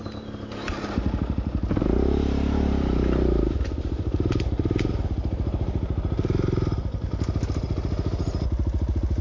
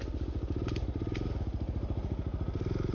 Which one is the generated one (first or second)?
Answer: first